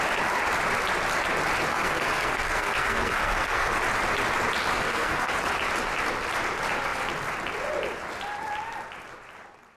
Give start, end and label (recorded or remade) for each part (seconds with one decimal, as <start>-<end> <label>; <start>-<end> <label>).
0.0-1.7 recorded; 1.7-3.8 remade; 3.8-4.7 recorded; 4.7-5.3 remade; 5.3-9.8 recorded